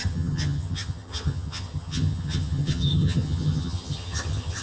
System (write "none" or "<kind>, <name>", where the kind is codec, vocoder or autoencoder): vocoder, HiFi-GAN